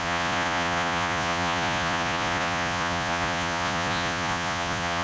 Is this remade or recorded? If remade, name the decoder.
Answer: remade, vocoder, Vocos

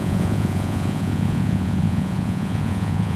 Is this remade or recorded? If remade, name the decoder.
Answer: remade, vocoder, Vocos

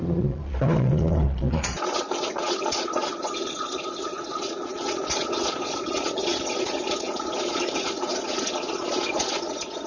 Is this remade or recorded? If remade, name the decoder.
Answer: remade, vocoder, Vocos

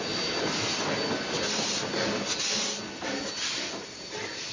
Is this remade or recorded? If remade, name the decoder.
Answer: recorded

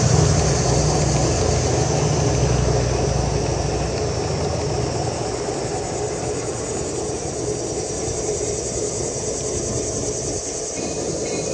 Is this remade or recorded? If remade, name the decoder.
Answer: recorded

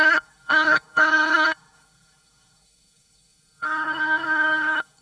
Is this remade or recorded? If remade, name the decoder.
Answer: remade, codec, SNAC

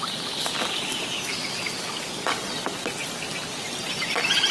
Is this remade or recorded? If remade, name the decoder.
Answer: recorded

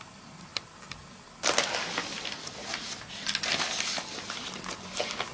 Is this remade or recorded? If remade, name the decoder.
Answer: recorded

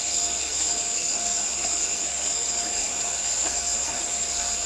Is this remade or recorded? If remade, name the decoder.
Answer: remade, codec, SNAC